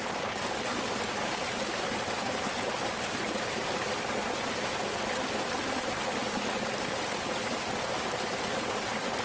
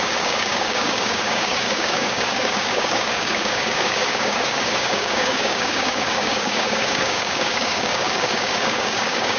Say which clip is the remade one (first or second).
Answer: second